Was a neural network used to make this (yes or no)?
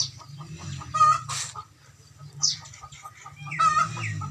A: no